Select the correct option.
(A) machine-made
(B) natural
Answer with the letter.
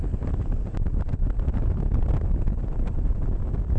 B